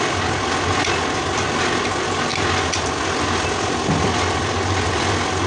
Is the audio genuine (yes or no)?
yes